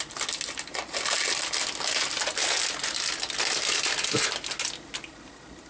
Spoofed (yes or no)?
no